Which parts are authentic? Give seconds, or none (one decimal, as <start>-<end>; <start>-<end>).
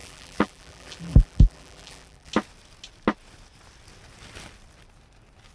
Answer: 2.3-5.5